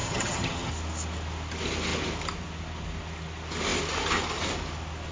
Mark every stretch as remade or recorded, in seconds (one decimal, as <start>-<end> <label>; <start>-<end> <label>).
0.0-0.7 remade; 0.7-5.1 recorded